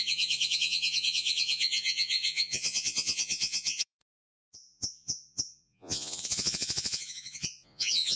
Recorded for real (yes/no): no